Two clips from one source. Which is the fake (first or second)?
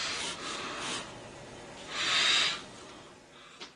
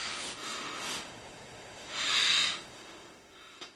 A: second